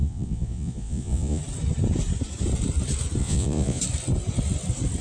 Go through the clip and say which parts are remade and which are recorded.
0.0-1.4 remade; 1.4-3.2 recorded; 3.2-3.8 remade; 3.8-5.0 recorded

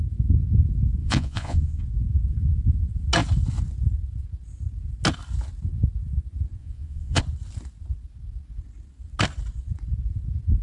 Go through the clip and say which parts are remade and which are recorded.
0.0-1.0 recorded; 1.0-1.8 remade; 1.8-6.6 recorded; 6.6-7.2 remade; 7.2-10.6 recorded

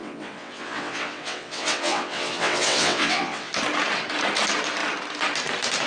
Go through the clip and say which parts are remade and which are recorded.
0.0-3.5 remade; 3.5-5.9 recorded

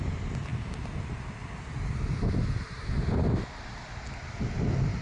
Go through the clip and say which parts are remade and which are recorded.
0.0-5.0 recorded

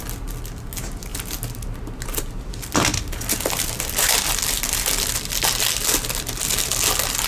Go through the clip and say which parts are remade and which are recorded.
0.0-7.3 recorded

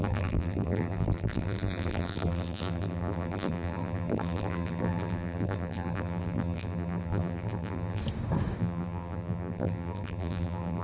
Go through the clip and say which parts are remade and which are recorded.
0.0-8.0 remade; 8.0-8.6 recorded; 8.6-10.8 remade

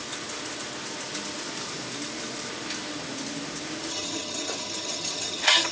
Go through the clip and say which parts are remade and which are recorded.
0.0-3.9 recorded; 3.9-5.7 remade